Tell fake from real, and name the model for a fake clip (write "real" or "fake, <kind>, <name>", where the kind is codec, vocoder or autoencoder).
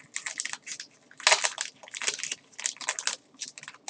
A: real